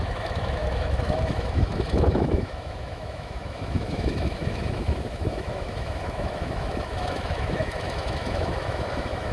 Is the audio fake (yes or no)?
yes